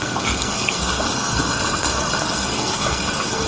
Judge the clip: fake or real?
fake